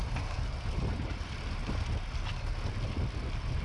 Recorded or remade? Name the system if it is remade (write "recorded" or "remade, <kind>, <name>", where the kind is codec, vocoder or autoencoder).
recorded